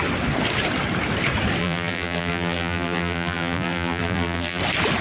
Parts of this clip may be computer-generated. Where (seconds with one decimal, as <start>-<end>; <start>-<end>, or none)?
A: 1.6-4.6